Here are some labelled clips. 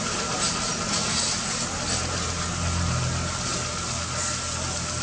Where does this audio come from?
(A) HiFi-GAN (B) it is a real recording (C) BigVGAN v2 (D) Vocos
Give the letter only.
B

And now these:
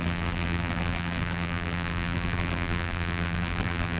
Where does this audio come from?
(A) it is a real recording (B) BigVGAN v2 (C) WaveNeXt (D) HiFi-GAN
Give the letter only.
B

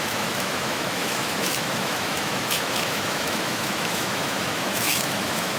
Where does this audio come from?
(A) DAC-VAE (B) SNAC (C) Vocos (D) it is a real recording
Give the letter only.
A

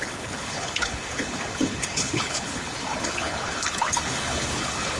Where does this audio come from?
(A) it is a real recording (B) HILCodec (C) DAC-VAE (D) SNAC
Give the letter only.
B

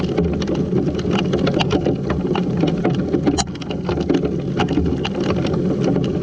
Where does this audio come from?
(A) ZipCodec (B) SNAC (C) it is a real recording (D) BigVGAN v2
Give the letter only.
C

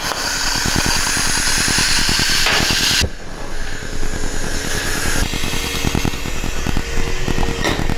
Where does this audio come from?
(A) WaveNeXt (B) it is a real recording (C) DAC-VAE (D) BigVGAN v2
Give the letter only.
B